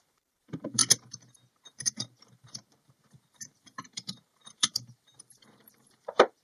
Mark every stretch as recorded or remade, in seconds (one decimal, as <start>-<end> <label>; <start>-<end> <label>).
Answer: 0.0-0.8 remade; 0.8-1.6 recorded; 1.6-6.4 remade

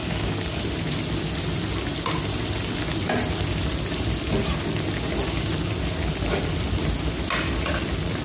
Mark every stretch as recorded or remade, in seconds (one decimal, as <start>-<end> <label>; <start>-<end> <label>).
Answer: 0.0-0.6 remade; 0.6-8.2 recorded

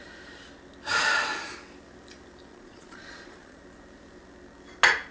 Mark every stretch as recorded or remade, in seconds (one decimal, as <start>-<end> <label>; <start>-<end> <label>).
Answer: 0.0-2.5 recorded; 2.5-3.6 remade; 3.6-5.1 recorded

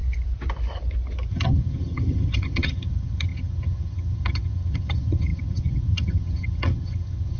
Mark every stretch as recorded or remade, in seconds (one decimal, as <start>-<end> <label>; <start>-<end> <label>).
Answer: 0.0-1.3 recorded; 1.3-7.4 remade

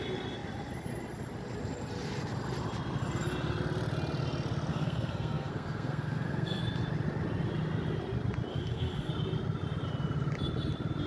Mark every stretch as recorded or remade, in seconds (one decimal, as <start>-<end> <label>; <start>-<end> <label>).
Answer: 0.0-4.7 recorded; 4.7-6.6 remade; 6.6-8.5 recorded; 8.5-9.1 remade; 9.1-11.1 recorded

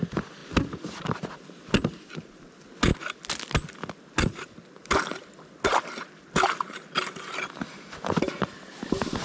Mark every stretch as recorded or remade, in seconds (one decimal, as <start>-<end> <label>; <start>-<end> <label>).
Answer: 0.0-9.2 recorded